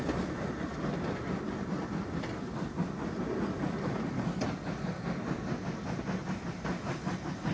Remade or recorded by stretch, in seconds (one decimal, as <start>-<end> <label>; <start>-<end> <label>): 0.0-7.5 recorded